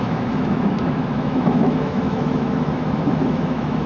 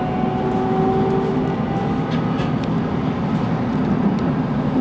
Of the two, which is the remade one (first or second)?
first